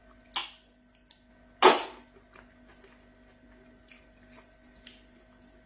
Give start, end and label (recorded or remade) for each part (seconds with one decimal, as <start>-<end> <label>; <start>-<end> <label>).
0.0-5.7 recorded